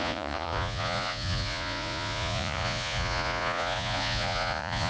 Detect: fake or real fake